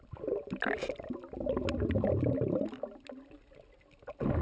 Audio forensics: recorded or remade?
recorded